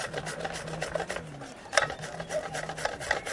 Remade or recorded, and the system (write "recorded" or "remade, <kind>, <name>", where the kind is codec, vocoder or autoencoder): recorded